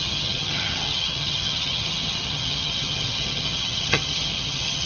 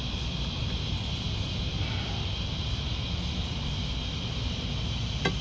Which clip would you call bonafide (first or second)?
second